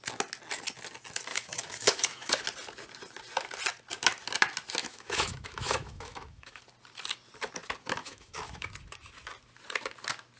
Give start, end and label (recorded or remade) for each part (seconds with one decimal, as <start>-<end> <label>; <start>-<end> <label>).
0.0-1.3 recorded; 1.3-2.3 remade; 2.3-4.8 recorded; 4.8-6.6 remade; 6.6-8.0 recorded; 8.0-8.7 remade; 8.7-10.4 recorded